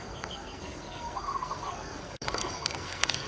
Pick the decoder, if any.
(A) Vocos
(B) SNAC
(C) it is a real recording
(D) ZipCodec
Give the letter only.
B